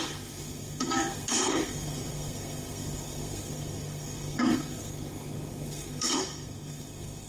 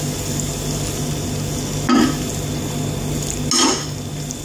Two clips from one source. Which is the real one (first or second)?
second